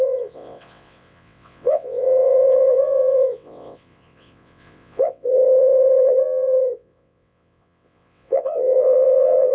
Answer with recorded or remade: remade